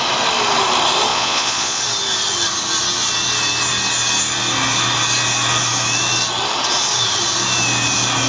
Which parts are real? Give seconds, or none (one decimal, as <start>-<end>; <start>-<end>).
0.0-1.1; 1.8-8.3